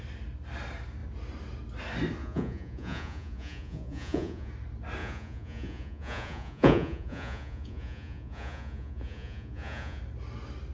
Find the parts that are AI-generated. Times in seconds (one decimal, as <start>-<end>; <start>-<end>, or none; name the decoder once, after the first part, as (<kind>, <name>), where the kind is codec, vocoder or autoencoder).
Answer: 2.2-4.5 (vocoder, Vocos); 5.0-10.0